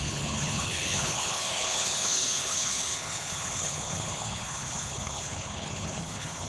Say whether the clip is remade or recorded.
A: remade